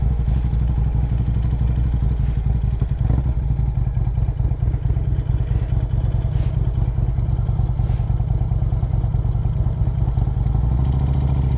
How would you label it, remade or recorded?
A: recorded